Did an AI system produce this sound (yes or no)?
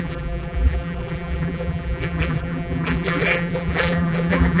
yes